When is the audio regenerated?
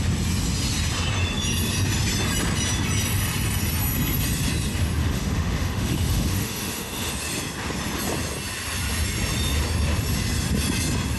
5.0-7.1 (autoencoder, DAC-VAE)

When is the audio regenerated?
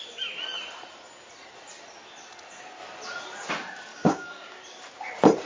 3.9-4.6 (codec, DAC)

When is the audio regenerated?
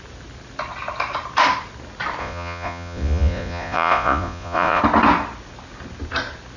2.2-4.8 (vocoder, Vocos)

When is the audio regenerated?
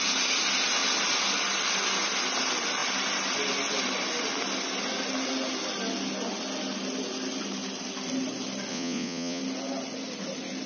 8.7-9.4 (vocoder, Vocos)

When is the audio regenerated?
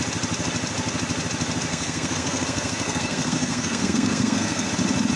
1.7-4.7 (codec, SNAC)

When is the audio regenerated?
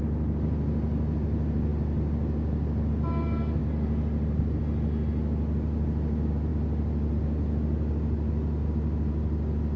1.7-2.9 (vocoder, BigVGAN v2); 3.6-4.6; 6.5-7.1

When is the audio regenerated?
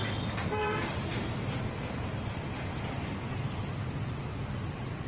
0.6-1.7 (vocoder, BigVGAN v2)